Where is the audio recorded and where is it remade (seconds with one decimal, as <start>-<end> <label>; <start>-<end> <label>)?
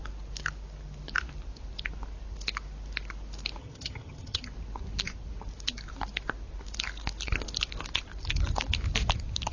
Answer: 0.0-3.6 recorded; 3.6-4.4 remade; 4.4-9.5 recorded